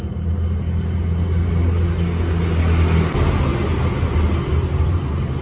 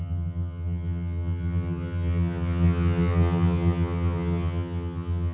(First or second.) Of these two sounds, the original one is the first